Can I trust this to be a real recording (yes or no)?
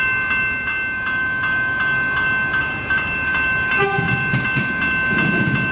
yes